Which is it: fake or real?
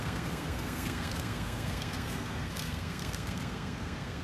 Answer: fake